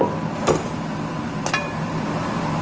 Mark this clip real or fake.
real